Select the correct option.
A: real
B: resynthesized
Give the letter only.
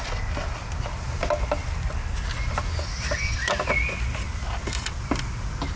A